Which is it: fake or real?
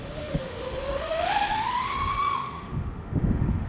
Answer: fake